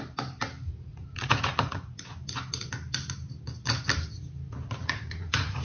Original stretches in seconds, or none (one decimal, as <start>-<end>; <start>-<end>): 0.0-0.9; 1.9-4.8